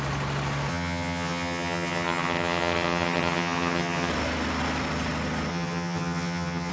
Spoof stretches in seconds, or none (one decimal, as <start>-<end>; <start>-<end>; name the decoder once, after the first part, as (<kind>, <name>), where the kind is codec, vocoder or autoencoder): 0.7-4.1 (vocoder, HiFi-GAN); 5.5-6.7